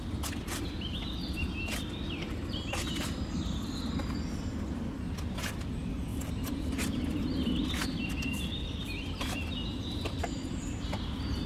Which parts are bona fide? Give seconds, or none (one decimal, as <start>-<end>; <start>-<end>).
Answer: 0.0-6.1; 7.0-8.8